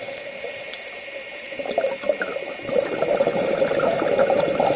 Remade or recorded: recorded